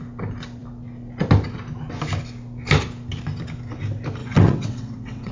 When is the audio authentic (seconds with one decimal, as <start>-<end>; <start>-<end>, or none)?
0.0-4.2